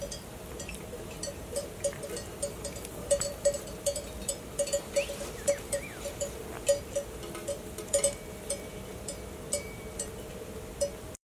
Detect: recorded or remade remade